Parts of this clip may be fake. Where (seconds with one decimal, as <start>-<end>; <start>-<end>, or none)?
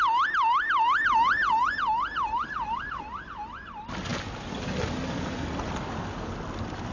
none